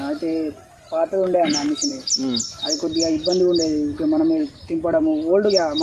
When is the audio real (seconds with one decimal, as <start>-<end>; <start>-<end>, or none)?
0.0-5.8